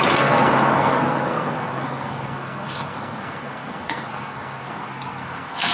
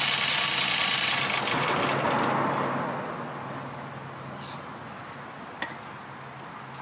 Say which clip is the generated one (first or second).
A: first